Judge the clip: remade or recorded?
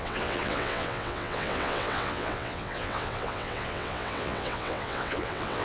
remade